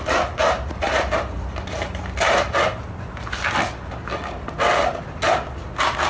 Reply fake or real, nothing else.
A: real